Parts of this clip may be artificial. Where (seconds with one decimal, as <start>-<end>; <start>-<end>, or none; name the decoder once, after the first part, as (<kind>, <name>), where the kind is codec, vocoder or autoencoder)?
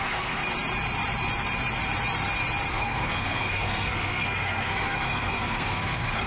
0.0-0.4 (codec, SNAC); 2.7-6.3